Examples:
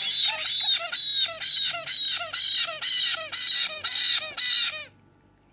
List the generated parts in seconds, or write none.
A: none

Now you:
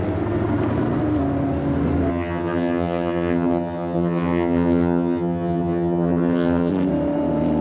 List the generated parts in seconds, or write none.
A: 2.1-6.7

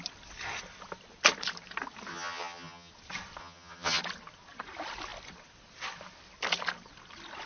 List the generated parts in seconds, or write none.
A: 2.1-2.9; 3.4-4.0

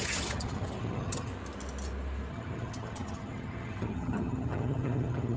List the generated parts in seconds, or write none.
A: 0.0-1.3; 2.3-5.4

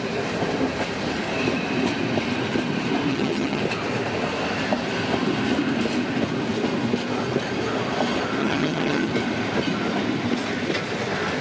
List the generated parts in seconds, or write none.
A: 3.1-3.6; 8.4-9.1

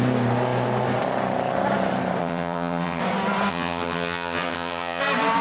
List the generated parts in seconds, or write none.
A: 2.2-3.0; 3.5-5.0

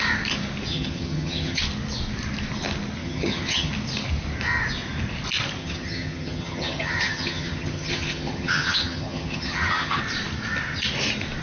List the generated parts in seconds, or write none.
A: 0.7-1.6; 3.0-3.7; 5.6-10.0

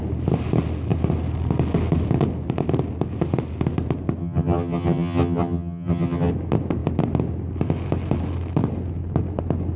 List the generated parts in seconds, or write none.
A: 4.2-6.3